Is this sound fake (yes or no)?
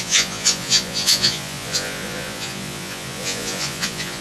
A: yes